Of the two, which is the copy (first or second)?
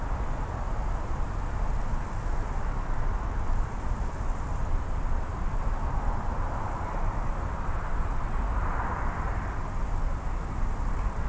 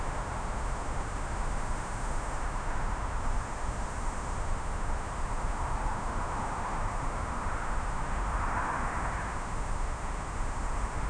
second